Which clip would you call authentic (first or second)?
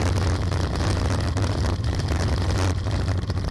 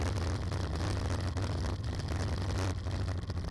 second